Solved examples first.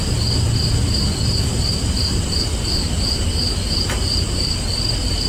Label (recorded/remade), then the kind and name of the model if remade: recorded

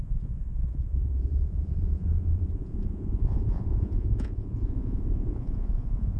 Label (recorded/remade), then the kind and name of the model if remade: remade, vocoder, Vocos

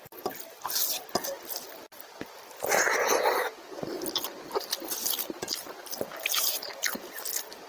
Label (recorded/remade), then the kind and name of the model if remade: recorded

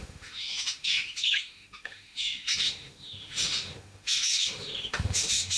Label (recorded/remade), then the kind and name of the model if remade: remade, autoencoder, DAC-VAE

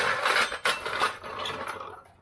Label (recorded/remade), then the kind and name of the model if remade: recorded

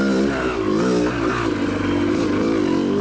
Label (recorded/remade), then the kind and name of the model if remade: recorded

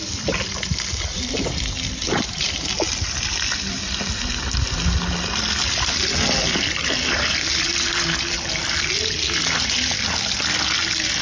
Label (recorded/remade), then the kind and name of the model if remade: recorded